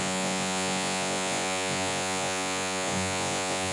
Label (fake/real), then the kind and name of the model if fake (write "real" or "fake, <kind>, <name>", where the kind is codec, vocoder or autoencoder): fake, vocoder, Vocos